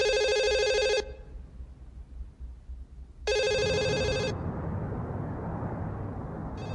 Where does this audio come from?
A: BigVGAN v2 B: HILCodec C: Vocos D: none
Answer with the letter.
D